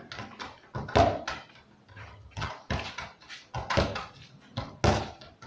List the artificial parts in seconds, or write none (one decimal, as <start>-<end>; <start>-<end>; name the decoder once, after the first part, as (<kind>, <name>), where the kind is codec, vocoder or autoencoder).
1.9-2.5 (vocoder, HiFi-GAN)